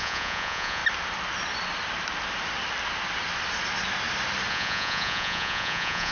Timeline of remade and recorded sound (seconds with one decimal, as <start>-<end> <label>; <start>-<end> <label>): 0.0-0.8 remade; 0.8-4.5 recorded; 4.5-6.1 remade